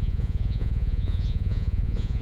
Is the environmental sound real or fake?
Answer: fake